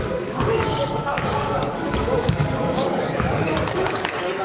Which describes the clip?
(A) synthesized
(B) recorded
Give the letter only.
A